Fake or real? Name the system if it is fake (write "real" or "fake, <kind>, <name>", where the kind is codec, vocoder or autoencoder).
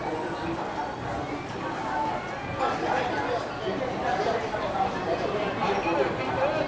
real